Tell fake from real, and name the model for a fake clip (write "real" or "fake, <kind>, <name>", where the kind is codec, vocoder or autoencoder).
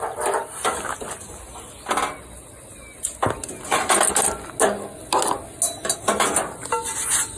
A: real